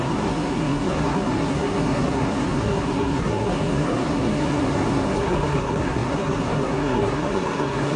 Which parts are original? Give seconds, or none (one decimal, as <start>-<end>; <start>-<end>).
none